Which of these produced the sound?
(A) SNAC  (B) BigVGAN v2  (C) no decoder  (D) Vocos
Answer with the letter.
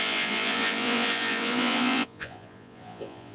D